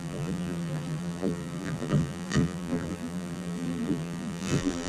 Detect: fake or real fake